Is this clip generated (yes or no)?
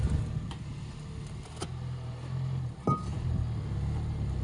no